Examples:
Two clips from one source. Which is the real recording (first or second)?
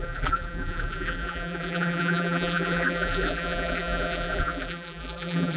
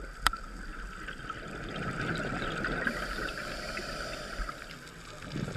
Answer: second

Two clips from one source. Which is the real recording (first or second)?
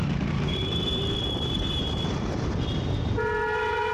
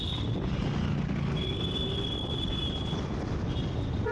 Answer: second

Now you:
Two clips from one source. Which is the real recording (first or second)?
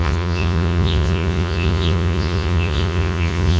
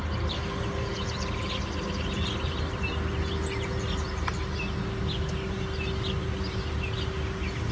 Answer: second